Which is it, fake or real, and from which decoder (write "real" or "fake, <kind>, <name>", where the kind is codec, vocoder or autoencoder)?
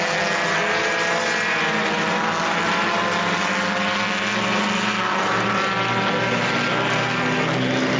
real